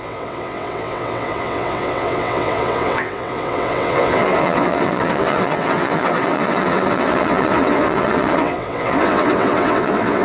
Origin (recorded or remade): remade